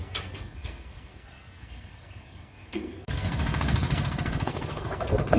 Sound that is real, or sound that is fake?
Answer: fake